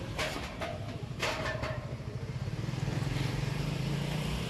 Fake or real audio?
fake